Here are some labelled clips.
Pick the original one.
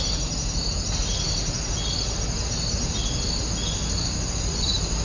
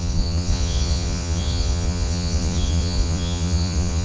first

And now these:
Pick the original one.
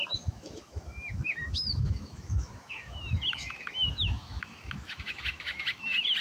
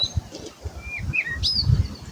second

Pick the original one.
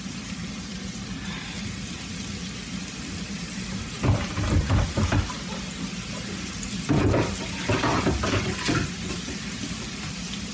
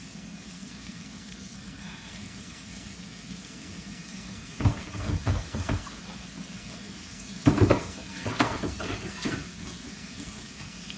first